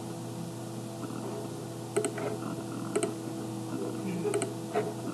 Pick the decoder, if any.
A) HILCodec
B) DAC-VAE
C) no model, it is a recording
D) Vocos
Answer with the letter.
C